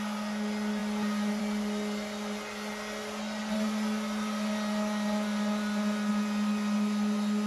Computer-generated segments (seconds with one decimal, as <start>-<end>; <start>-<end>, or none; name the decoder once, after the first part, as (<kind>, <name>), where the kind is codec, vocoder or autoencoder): none